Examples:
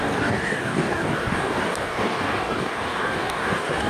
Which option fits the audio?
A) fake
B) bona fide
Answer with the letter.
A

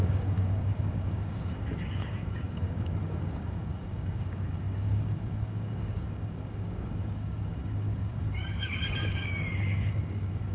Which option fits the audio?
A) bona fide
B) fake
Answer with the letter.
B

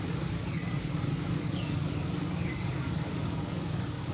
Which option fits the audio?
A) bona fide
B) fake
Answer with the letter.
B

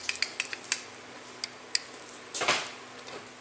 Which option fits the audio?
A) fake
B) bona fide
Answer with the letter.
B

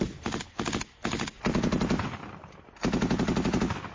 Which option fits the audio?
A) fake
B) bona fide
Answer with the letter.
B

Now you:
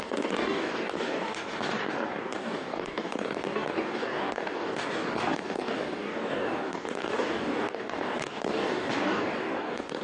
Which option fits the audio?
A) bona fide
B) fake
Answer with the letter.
B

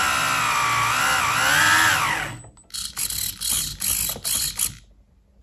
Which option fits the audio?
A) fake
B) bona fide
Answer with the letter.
B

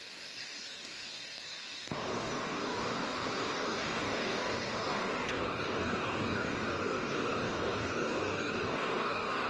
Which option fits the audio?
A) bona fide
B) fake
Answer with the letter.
B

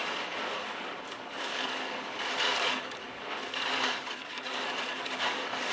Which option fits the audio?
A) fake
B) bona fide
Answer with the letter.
A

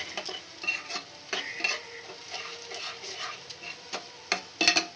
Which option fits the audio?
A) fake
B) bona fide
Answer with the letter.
B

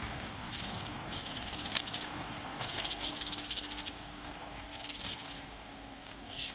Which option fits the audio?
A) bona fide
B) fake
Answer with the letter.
B